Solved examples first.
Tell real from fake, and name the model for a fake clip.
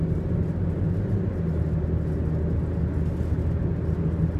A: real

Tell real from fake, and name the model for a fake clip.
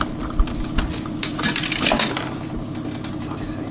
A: real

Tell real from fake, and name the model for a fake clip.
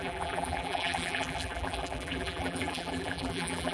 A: fake, vocoder, BigVGAN v2